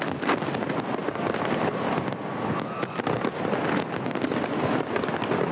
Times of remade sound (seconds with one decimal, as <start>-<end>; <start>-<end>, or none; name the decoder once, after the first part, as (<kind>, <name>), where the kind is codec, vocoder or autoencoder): none